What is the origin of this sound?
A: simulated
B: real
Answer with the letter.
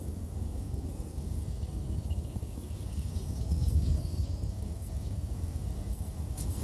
A